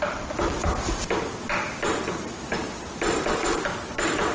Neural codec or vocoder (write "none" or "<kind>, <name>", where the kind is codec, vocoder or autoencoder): none